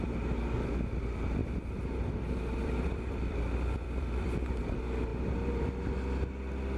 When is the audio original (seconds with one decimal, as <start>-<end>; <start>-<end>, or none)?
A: 0.0-1.4; 2.0-2.6; 4.6-6.8